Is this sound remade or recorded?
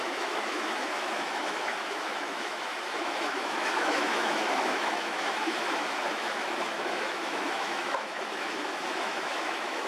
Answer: remade